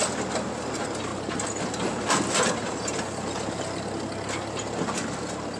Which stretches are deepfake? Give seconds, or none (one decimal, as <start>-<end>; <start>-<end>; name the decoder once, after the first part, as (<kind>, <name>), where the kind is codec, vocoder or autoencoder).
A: none